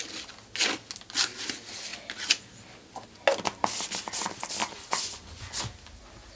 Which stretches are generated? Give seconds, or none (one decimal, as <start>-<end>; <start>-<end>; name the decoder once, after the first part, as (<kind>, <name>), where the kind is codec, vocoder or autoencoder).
4.6-5.6 (vocoder, Vocos)